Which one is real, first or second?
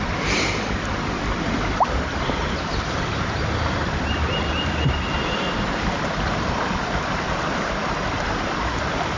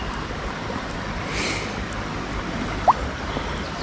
second